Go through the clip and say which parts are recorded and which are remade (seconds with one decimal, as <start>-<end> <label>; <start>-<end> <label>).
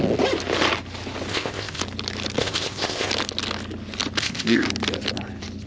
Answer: 0.0-1.3 recorded; 1.3-1.8 remade; 1.8-2.4 recorded; 2.4-3.1 remade; 3.1-4.2 recorded; 4.2-4.7 remade; 4.7-5.7 recorded